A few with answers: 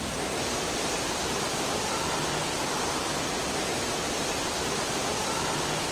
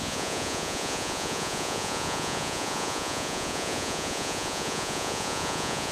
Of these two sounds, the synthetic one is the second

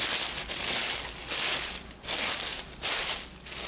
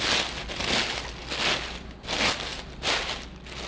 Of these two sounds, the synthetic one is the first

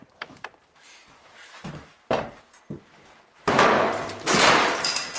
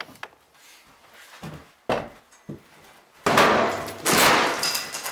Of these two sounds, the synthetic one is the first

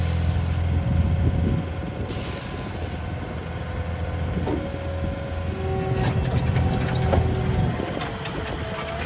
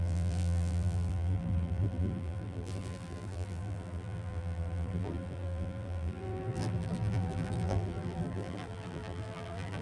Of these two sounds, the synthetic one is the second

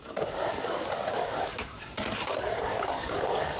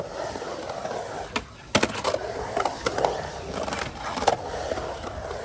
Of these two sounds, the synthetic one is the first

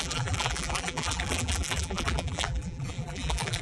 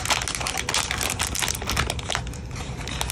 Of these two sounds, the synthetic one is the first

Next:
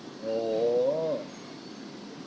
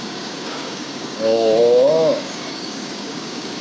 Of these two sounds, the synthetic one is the second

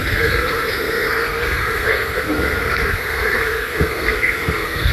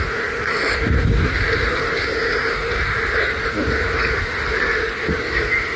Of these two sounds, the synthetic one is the first